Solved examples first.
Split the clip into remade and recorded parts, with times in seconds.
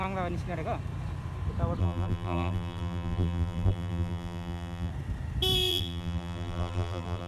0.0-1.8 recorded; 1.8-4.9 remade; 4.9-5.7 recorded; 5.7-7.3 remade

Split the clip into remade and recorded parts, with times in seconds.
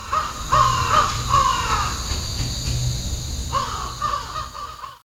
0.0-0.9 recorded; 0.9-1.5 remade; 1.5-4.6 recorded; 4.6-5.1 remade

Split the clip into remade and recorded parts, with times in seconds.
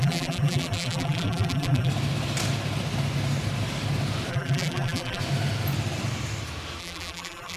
0.0-1.9 remade; 1.9-4.3 recorded; 4.3-5.2 remade; 5.2-6.8 recorded; 6.8-7.6 remade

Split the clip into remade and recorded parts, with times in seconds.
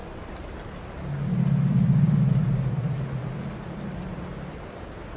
0.0-5.2 remade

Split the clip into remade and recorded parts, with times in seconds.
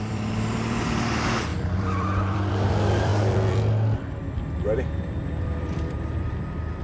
0.0-6.8 remade